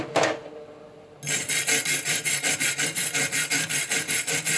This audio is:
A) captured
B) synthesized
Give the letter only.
A